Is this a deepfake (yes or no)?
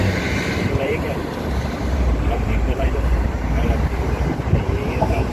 yes